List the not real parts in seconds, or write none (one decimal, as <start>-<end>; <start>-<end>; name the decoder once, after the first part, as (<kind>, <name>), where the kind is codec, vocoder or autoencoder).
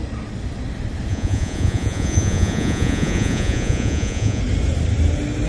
1.1-4.4 (vocoder, Vocos)